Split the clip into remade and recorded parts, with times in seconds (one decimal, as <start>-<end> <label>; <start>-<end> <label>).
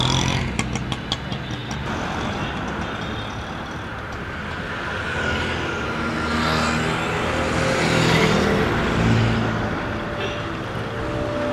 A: 0.0-1.6 recorded; 1.6-2.5 remade; 2.5-11.5 recorded